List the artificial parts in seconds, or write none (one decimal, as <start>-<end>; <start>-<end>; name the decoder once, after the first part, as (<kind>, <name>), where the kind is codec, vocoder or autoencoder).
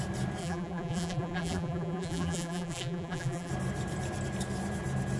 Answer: 0.4-3.5 (vocoder, BigVGAN v2)